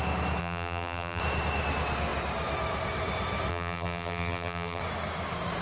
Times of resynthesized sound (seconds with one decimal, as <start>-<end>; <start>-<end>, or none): 0.4-1.2; 3.5-4.8